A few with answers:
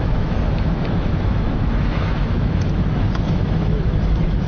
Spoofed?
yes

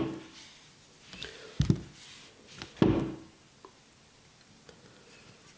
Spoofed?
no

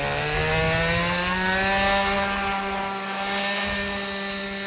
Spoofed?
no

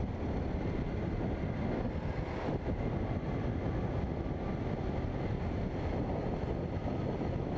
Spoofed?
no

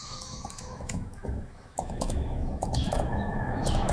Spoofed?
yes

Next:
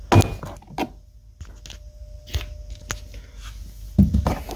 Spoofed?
no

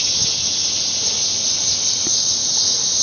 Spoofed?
no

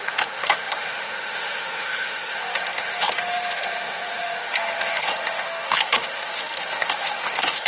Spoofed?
yes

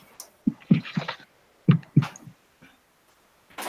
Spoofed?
no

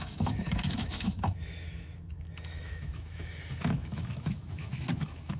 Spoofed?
yes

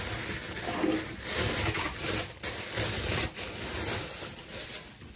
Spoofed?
no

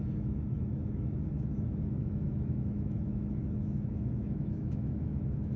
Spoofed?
yes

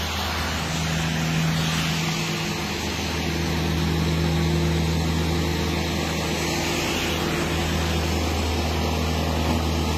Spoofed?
no